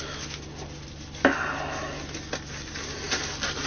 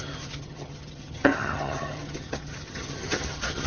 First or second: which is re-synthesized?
second